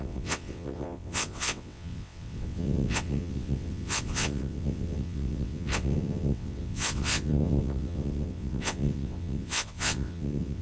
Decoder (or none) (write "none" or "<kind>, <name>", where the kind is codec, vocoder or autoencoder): vocoder, WaveNeXt